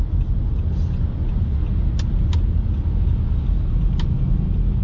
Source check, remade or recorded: recorded